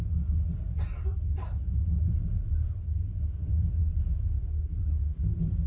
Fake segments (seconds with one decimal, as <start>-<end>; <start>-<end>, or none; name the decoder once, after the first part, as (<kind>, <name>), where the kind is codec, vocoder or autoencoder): 1.1-3.2 (vocoder, BigVGAN v2); 5.1-5.7